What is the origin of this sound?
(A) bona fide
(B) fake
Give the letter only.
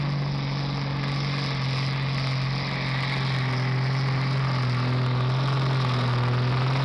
A